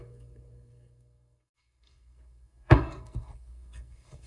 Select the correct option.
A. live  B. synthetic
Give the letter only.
B